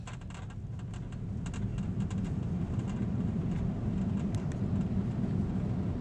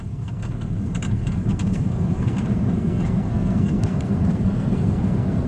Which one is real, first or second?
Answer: first